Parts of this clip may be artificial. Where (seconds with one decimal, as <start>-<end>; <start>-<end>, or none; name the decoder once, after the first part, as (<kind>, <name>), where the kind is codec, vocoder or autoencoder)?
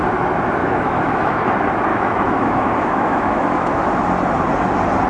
0.6-1.4 (autoencoder, DAC-VAE); 1.9-3.8